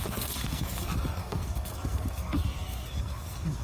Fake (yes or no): yes